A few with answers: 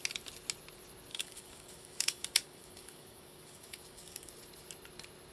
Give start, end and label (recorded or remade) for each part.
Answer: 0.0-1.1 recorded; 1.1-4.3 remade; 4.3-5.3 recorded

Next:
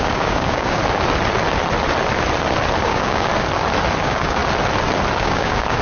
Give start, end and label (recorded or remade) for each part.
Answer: 0.0-0.8 remade; 0.8-2.8 recorded; 2.8-3.3 remade; 3.3-4.0 recorded; 4.0-4.4 remade; 4.4-5.2 recorded; 5.2-5.8 remade

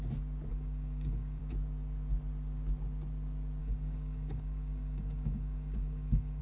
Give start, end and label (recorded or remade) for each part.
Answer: 0.0-0.5 recorded; 0.5-1.4 remade; 1.4-3.6 recorded; 3.6-6.4 remade

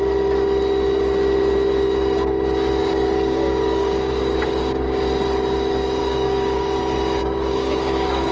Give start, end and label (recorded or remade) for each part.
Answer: 0.0-2.8 recorded; 2.8-4.3 remade; 4.3-6.0 recorded; 6.0-6.8 remade; 6.8-7.2 recorded; 7.2-8.3 remade

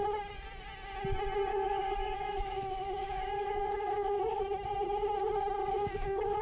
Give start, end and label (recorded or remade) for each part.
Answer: 0.0-1.5 recorded; 1.5-4.4 remade; 4.4-5.6 recorded; 5.6-6.4 remade

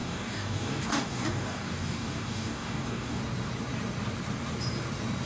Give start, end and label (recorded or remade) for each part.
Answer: 0.0-3.2 remade; 3.2-5.3 recorded

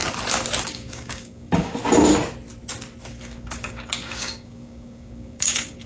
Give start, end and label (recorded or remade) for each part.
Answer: 0.0-0.6 recorded; 0.6-1.8 remade; 1.8-3.1 recorded; 3.1-5.9 remade

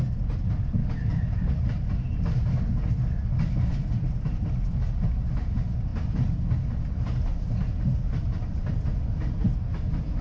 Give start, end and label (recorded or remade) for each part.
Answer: 0.0-0.8 recorded; 0.8-1.6 remade; 1.6-10.2 recorded